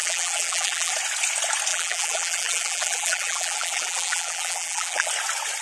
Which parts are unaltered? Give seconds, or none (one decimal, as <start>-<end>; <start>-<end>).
0.9-1.7; 5.1-5.6